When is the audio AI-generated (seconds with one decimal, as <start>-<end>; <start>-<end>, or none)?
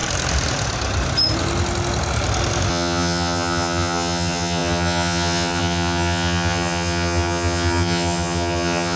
2.7-9.0